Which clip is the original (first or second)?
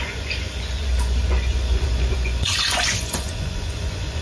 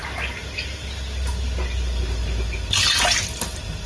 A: second